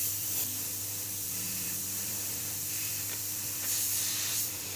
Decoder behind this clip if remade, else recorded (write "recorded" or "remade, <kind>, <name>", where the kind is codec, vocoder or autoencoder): remade, vocoder, BigVGAN v2